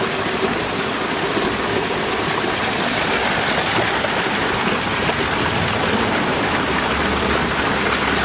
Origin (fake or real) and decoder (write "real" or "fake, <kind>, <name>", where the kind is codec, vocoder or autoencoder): real